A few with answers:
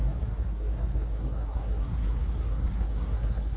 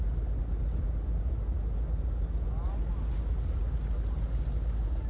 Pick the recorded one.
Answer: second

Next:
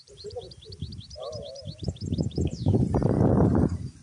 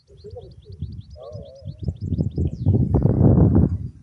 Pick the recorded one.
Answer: second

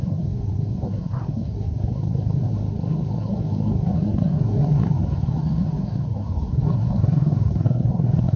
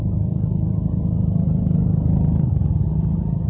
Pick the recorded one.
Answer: second